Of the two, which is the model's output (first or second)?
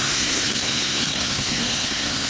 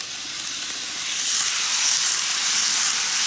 first